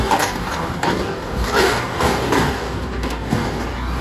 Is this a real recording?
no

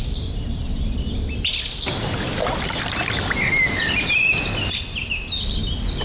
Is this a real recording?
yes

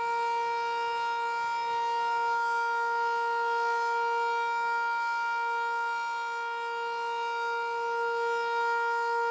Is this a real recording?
yes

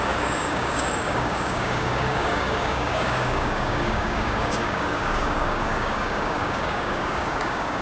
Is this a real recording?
no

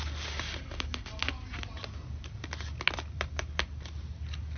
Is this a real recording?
yes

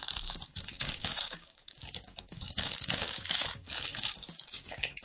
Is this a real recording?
no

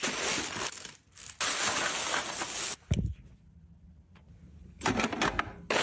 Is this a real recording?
yes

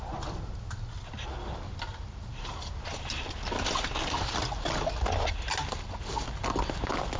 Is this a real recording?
yes